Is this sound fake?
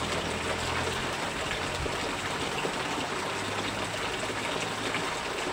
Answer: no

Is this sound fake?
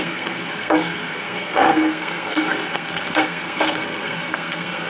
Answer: yes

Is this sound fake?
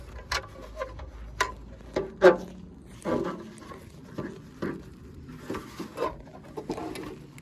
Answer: no